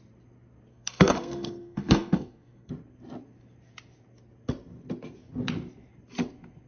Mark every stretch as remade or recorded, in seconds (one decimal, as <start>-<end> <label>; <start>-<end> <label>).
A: 0.0-0.7 recorded; 0.7-2.7 remade; 2.7-6.7 recorded